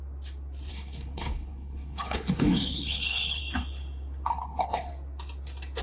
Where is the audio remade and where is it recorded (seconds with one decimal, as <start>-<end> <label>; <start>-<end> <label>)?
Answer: 0.0-0.7 recorded; 0.7-3.4 remade; 3.4-4.3 recorded; 4.3-4.9 remade; 4.9-5.8 recorded